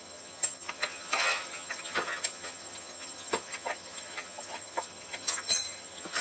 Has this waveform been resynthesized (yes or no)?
yes